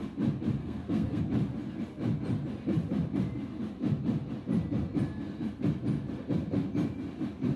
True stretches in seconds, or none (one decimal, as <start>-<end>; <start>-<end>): 0.0-0.6; 1.2-7.6